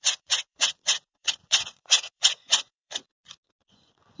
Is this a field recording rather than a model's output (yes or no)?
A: no